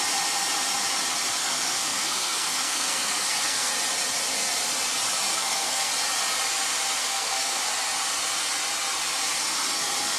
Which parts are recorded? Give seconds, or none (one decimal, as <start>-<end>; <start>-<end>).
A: 0.0-1.4; 3.7-5.3; 5.9-7.0; 7.6-10.2